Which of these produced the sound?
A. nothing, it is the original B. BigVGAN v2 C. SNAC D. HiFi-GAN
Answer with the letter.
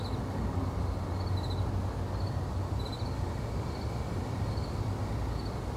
A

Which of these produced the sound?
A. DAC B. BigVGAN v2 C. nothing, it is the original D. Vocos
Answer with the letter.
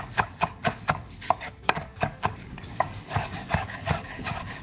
A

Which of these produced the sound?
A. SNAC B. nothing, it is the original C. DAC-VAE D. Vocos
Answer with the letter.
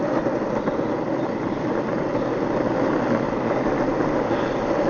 B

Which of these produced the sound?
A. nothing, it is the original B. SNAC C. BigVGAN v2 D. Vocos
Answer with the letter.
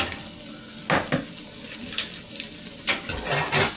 A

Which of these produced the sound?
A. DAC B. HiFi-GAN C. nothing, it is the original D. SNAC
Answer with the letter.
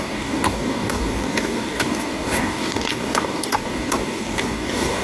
A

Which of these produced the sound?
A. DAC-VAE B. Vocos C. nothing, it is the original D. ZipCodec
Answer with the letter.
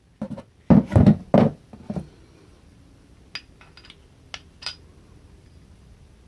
C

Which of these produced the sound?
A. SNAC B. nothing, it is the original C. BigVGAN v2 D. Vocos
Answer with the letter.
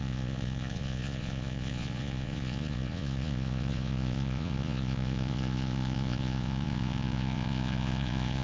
D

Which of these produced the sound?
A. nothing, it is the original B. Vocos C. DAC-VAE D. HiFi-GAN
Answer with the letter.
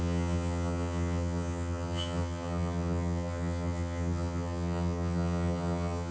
D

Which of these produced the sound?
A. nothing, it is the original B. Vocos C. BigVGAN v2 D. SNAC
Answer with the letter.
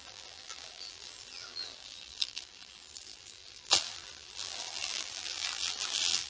C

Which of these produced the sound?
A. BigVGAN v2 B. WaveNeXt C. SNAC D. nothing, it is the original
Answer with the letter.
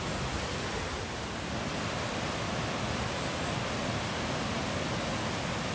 D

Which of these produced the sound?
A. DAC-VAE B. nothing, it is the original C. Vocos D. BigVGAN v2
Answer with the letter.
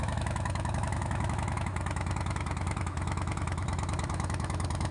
A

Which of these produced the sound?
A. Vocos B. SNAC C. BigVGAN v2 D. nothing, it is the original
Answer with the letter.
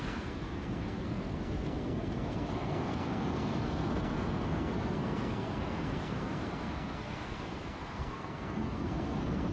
B